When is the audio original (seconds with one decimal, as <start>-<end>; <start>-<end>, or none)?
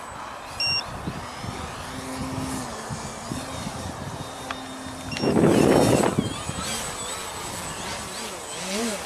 0.0-3.1; 4.4-9.1